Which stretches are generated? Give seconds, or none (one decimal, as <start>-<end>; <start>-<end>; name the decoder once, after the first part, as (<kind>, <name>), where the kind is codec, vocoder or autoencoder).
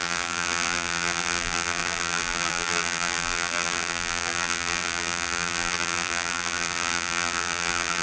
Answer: 0.0-8.0 (vocoder, BigVGAN v2)